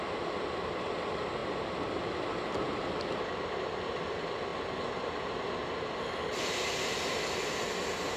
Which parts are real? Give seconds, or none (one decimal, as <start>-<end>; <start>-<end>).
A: 0.0-8.2

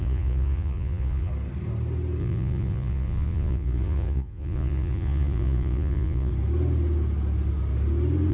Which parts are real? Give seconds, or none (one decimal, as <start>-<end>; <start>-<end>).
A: 1.3-2.2; 6.3-8.3